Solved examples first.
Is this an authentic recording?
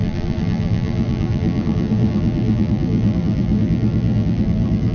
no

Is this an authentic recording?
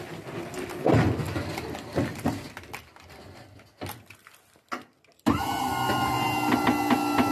yes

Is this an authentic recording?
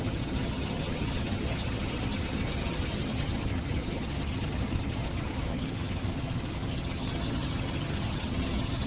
no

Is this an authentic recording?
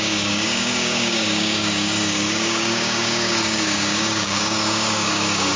no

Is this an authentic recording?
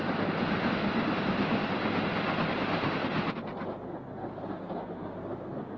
no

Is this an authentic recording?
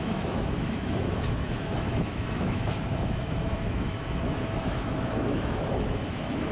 no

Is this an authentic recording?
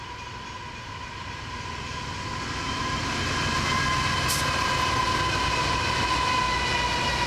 yes